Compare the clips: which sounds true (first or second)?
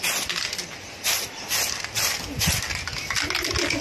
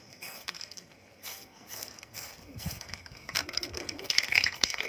first